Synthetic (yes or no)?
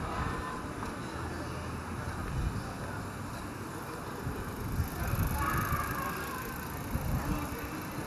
no